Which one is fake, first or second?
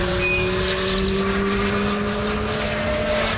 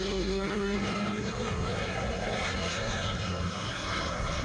second